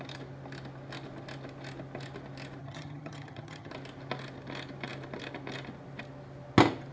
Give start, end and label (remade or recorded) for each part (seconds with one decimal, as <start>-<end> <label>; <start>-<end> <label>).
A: 0.0-2.6 recorded; 2.6-3.7 remade; 3.7-6.9 recorded